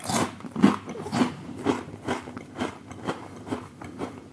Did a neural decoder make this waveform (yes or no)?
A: yes